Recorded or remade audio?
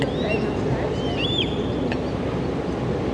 recorded